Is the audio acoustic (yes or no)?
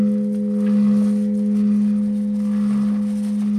yes